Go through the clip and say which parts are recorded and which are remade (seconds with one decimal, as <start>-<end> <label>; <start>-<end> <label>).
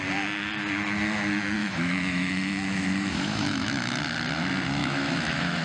0.0-1.6 recorded; 1.6-4.0 remade; 4.0-4.8 recorded; 4.8-5.6 remade